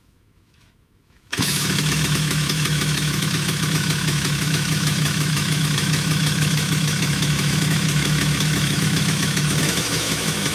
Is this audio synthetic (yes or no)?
yes